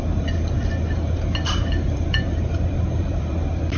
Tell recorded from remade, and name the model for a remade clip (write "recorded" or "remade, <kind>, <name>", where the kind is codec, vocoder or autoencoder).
remade, vocoder, BigVGAN v2